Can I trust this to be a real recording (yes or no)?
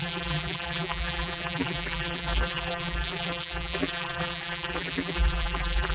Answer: no